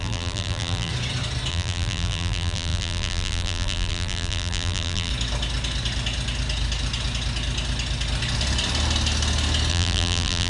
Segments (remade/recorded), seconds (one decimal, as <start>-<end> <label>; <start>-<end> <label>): 0.0-0.9 remade; 0.9-1.5 recorded; 1.5-5.1 remade; 5.1-9.7 recorded; 9.7-10.5 remade